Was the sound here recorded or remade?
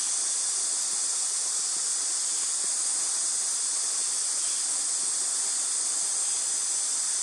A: recorded